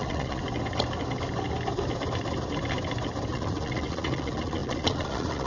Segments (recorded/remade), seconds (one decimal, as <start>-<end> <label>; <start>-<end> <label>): 0.0-0.4 remade; 0.4-3.3 recorded; 3.3-5.5 remade